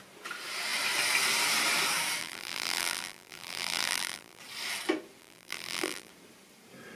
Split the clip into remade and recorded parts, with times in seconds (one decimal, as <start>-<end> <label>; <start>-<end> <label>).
0.0-2.2 recorded; 2.2-4.4 remade; 4.4-5.2 recorded; 5.2-6.1 remade; 6.1-7.0 recorded